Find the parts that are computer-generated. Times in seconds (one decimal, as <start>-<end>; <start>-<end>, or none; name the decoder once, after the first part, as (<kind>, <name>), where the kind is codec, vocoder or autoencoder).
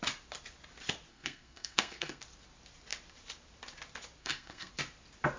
1.1-2.2 (codec, SNAC); 4.2-4.7